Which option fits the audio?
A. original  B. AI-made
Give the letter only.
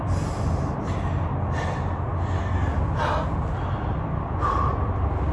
A